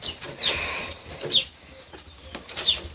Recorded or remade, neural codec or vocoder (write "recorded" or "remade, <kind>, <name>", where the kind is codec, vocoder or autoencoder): recorded